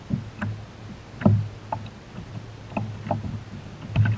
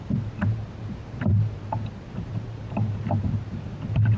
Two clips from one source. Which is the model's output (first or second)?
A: second